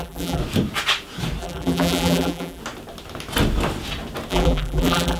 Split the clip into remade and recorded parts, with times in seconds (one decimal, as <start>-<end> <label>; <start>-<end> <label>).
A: 0.0-0.4 remade; 0.4-1.4 recorded; 1.4-2.6 remade; 2.6-4.3 recorded; 4.3-5.2 remade